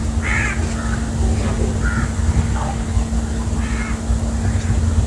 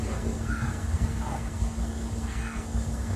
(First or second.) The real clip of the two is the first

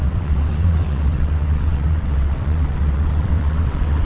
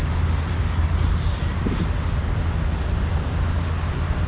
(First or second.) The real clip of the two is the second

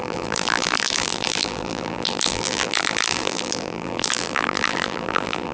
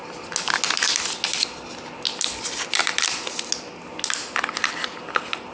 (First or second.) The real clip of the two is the second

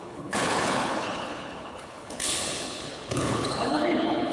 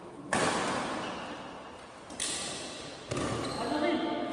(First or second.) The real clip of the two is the second